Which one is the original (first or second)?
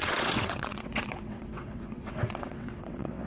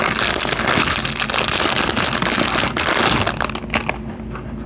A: second